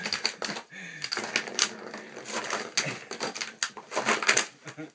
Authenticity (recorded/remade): recorded